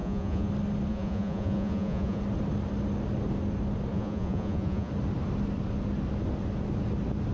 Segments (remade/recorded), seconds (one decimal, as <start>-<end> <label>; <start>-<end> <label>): 0.0-0.5 remade; 0.5-0.9 recorded; 0.9-2.2 remade; 2.2-3.9 recorded; 3.9-4.9 remade; 4.9-7.3 recorded